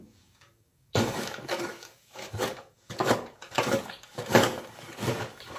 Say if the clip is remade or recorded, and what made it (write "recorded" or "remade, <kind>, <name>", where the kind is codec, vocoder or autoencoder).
remade, codec, DAC